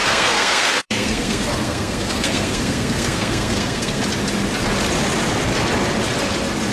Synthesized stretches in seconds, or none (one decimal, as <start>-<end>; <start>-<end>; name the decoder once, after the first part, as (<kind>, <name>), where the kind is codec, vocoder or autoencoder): 0.0-4.0 (codec, SNAC)